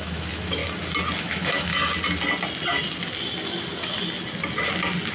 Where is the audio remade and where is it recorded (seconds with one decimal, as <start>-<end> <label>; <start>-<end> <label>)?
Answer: 0.0-0.6 remade; 0.6-1.2 recorded; 1.2-1.8 remade; 1.8-5.1 recorded